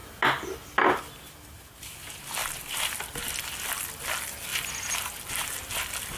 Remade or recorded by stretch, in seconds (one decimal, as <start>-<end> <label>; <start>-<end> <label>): 0.0-6.2 recorded

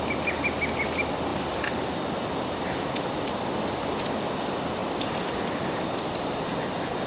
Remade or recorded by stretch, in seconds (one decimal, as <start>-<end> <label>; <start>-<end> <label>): 0.0-1.3 recorded; 1.3-3.2 remade; 3.2-7.1 recorded

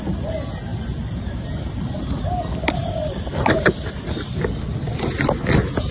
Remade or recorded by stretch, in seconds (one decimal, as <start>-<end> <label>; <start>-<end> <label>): 0.0-0.7 recorded; 0.7-2.3 remade; 2.3-2.8 recorded; 2.8-4.0 remade; 4.0-5.9 recorded

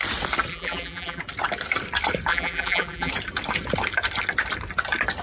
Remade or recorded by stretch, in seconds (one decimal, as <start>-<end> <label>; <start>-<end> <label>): 0.0-0.5 recorded; 0.5-1.2 remade; 1.2-2.3 recorded; 2.3-3.1 remade; 3.1-5.2 recorded

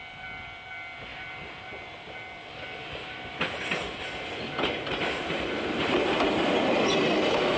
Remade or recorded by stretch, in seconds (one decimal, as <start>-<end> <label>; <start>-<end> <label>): 0.0-7.6 recorded

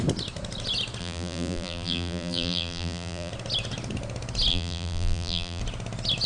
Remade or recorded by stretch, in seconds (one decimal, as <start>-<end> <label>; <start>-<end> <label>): 0.0-1.0 recorded; 1.0-3.3 remade; 3.3-4.5 recorded; 4.5-5.6 remade; 5.6-6.3 recorded